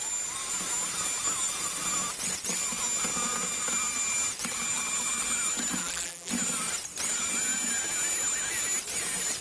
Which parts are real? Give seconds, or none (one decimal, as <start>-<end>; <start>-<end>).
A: 0.0-5.8; 6.3-9.4

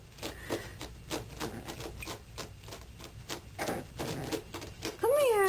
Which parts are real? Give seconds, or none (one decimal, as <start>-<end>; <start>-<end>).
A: 0.0-5.5

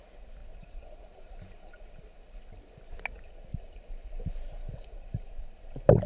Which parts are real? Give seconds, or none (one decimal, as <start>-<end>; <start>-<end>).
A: 0.0-0.4; 1.4-3.5

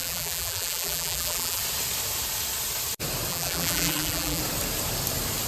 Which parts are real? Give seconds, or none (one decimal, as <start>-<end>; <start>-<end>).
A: 1.6-3.3; 4.4-5.5

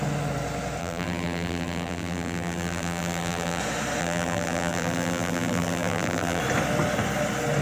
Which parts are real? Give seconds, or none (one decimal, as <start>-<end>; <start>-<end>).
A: 0.0-0.8; 3.6-4.0; 6.4-7.6

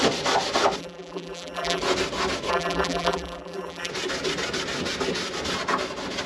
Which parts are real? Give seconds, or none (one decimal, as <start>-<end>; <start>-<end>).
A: 0.0-0.8; 1.8-2.5; 3.9-6.3

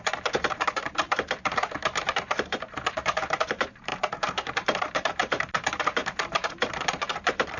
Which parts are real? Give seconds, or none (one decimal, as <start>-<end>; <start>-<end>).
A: none